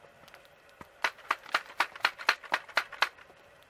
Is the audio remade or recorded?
recorded